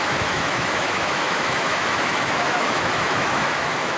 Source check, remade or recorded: remade